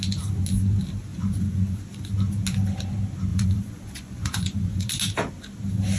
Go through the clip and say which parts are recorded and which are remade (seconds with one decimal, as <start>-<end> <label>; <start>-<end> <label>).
0.0-1.1 recorded; 1.1-1.8 remade; 1.8-3.3 recorded; 3.3-4.9 remade; 4.9-6.0 recorded